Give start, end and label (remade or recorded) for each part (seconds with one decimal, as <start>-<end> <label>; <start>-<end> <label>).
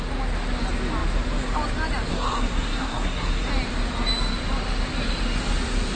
0.0-2.1 recorded; 2.1-3.5 remade; 3.5-6.0 recorded